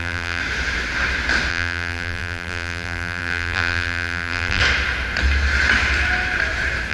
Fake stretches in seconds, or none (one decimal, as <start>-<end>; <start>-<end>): 0.0-0.4; 1.5-4.6